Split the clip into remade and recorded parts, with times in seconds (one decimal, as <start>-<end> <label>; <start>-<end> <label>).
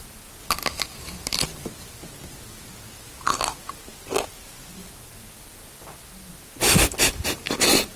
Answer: 0.0-8.0 recorded